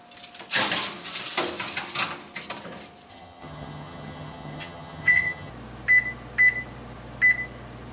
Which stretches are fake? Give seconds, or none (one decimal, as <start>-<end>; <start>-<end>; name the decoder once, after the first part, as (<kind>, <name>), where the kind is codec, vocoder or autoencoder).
3.1-5.5 (vocoder, HiFi-GAN)